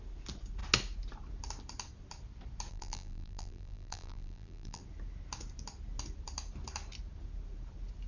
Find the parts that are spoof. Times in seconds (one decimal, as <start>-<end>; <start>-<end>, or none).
2.7-4.8

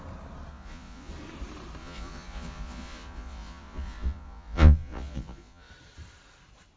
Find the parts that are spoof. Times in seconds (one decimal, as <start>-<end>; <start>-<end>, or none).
0.5-1.1; 1.8-5.7

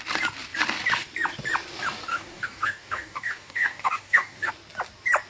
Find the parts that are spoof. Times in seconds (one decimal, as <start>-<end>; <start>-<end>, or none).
2.1-4.5

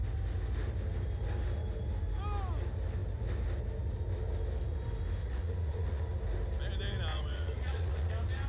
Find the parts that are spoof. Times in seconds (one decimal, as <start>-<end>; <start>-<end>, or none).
5.2-6.0; 7.1-8.1

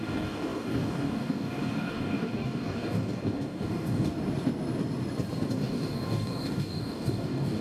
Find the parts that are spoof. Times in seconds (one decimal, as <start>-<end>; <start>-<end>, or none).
0.0-4.1; 5.5-7.6